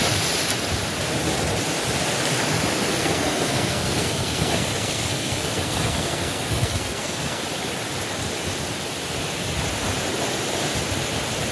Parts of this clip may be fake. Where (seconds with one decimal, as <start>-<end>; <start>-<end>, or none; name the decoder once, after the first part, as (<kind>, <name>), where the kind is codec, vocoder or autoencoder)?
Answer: 2.9-7.4 (codec, SNAC)